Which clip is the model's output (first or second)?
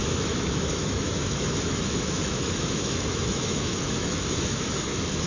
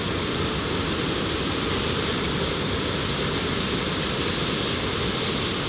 first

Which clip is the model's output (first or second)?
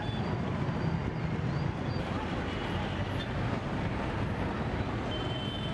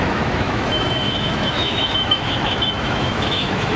second